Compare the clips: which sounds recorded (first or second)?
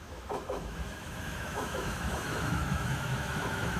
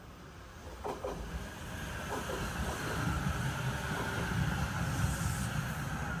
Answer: second